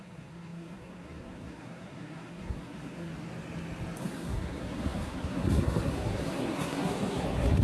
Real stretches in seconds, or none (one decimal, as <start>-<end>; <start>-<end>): 3.1-4.0